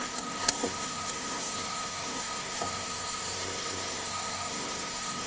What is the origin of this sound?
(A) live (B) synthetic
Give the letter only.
B